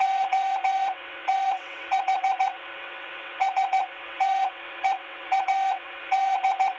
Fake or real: fake